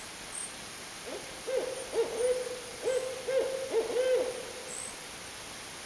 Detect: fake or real real